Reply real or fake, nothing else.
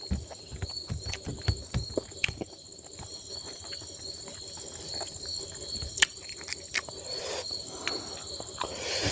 real